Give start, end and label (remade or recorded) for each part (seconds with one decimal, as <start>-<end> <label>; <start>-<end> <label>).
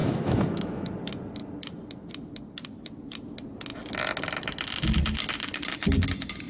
0.0-0.9 remade; 0.9-6.5 recorded